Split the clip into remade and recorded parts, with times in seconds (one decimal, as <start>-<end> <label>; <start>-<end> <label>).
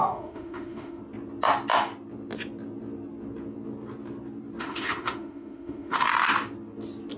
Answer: 0.0-1.0 remade; 1.0-4.6 recorded; 4.6-6.1 remade; 6.1-7.2 recorded